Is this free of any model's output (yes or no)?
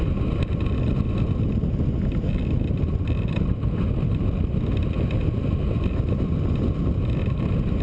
yes